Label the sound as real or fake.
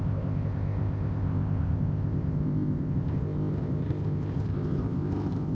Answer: fake